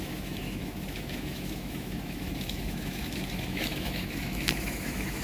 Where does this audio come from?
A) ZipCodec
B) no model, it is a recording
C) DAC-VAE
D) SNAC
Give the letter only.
C